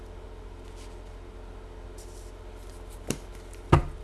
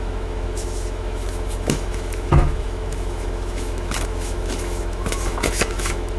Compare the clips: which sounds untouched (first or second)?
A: first